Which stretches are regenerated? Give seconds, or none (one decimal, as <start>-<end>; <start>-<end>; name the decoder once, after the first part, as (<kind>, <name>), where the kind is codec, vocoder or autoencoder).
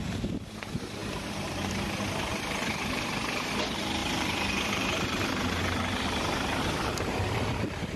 1.0-1.7 (vocoder, BigVGAN v2); 2.3-3.5; 4.0-8.0